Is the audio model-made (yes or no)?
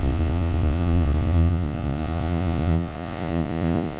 yes